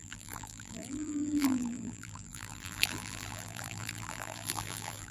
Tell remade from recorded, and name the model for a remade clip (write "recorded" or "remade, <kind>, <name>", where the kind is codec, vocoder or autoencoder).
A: remade, vocoder, BigVGAN v2